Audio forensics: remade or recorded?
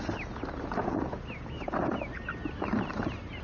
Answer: recorded